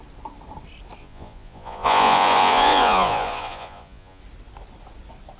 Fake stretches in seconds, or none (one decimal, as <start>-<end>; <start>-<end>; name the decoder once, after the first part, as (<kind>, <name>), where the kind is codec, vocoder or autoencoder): 1.0-4.2 (vocoder, Vocos)